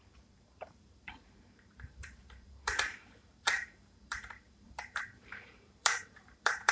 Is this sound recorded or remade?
remade